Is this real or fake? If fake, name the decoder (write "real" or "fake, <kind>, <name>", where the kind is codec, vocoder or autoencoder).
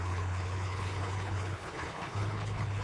fake, codec, HILCodec